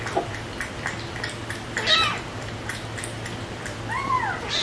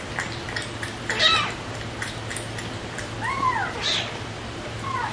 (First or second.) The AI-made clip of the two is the second